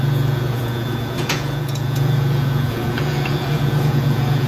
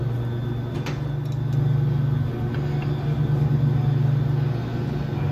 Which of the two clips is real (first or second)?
second